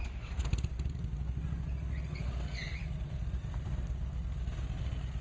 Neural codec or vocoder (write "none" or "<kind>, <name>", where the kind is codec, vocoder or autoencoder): none